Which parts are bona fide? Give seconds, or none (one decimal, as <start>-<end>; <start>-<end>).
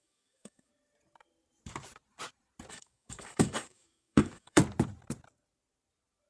0.7-2.7; 4.6-6.3